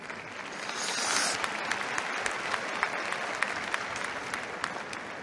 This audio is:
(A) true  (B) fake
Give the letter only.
A